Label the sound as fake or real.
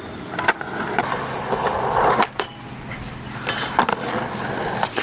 real